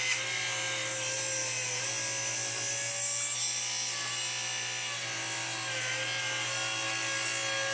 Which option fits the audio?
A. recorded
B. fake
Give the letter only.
A